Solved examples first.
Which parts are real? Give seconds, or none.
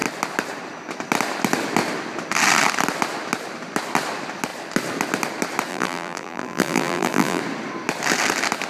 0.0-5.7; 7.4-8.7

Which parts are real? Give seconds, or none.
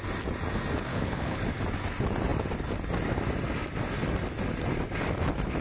0.0-0.9; 1.4-5.6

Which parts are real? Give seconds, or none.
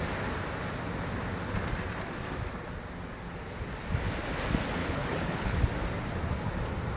0.0-4.8; 5.6-7.0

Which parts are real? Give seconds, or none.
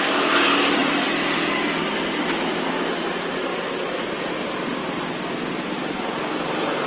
0.0-0.8; 1.9-6.9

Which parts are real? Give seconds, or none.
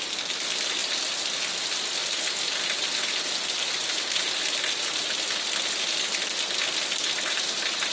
0.0-7.9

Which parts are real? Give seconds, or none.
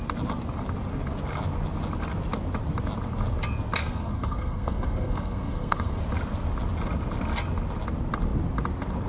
0.0-3.8; 6.0-9.1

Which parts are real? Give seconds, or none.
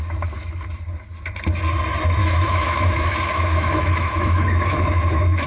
0.0-2.2